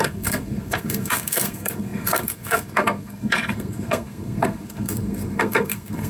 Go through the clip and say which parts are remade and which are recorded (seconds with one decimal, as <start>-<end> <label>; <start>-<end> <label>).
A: 0.0-6.1 remade